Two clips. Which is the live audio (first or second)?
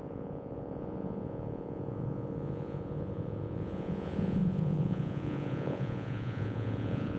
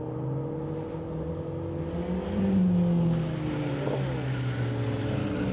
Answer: second